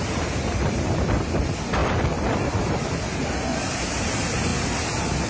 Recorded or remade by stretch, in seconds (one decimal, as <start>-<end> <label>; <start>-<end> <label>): 0.0-3.5 remade; 3.5-4.1 recorded; 4.1-5.3 remade